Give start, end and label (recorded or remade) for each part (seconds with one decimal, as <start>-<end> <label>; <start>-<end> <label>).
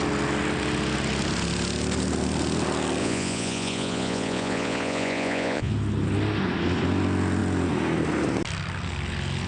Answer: 0.0-3.0 recorded; 3.0-5.7 remade; 5.7-9.5 recorded